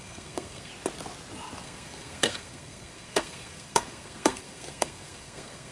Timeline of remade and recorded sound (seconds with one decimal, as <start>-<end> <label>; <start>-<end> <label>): 0.0-0.7 remade; 0.7-1.6 recorded; 1.6-5.7 remade